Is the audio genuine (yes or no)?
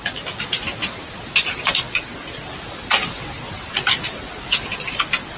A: yes